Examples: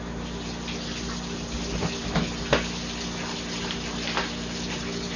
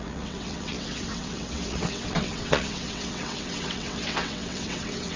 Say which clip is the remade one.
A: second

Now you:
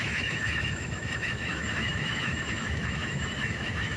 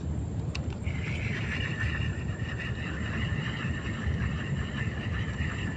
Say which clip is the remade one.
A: first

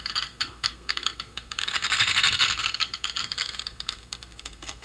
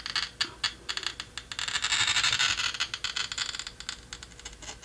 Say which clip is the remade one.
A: first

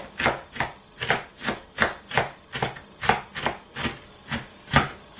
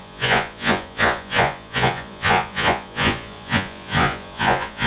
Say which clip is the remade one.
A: second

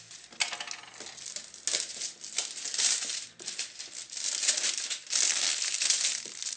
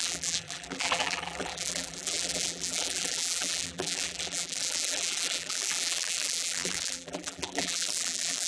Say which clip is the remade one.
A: second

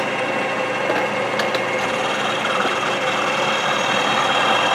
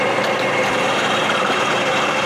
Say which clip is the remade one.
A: second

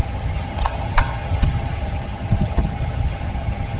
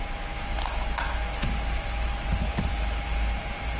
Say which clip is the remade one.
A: first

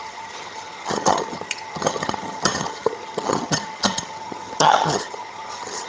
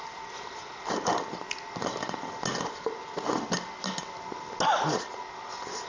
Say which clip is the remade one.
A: first